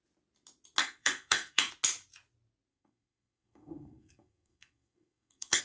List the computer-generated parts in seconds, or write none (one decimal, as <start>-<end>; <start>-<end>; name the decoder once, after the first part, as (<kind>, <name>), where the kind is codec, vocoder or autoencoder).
0.8-1.7 (codec, SNAC); 2.7-5.6